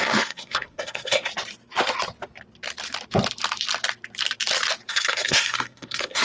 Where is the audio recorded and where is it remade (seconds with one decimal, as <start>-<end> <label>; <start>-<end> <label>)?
0.0-1.3 remade; 1.3-4.9 recorded; 4.9-6.2 remade